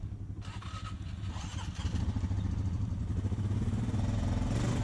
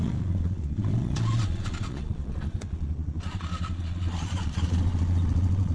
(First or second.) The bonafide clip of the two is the first